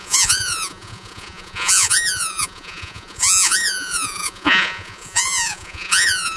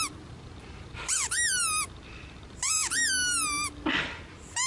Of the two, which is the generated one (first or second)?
first